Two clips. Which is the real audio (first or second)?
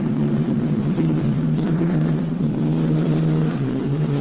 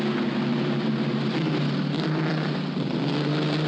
second